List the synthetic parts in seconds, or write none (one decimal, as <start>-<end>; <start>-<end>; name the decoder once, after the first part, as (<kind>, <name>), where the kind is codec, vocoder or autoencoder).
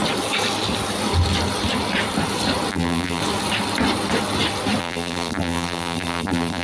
2.7-3.2 (vocoder, BigVGAN v2); 4.8-6.6